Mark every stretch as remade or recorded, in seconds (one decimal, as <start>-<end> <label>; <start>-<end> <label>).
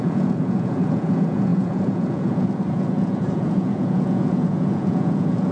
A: 0.0-5.5 remade